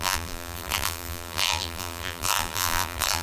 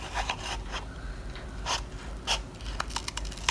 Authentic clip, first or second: second